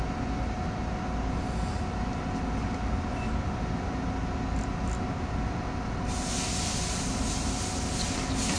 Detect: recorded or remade recorded